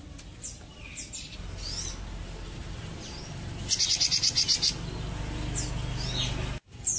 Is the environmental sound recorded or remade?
recorded